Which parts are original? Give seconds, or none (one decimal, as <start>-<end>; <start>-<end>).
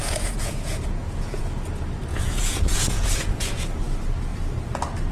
1.4-2.1; 3.5-5.1